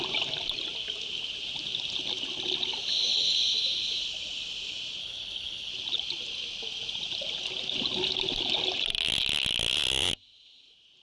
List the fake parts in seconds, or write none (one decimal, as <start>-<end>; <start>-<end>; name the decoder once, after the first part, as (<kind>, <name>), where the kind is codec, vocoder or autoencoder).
5.0-5.7 (codec, HILCodec)